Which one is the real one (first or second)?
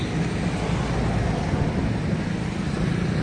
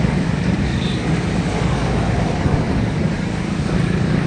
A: first